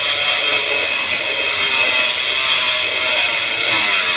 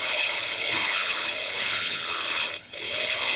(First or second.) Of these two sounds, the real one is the first